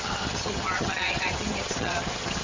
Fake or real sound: fake